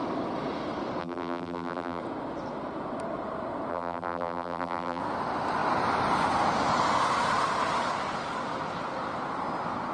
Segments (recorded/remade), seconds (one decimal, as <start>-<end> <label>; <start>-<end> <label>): 0.0-1.0 recorded; 1.0-2.0 remade; 2.0-3.7 recorded; 3.7-5.0 remade; 5.0-9.9 recorded